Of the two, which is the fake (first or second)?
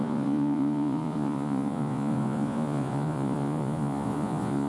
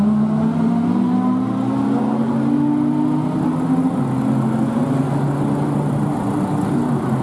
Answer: first